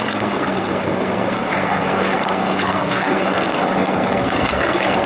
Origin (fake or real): fake